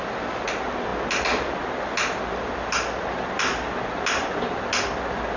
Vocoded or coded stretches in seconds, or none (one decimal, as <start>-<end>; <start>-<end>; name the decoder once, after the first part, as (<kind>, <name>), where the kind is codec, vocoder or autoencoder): none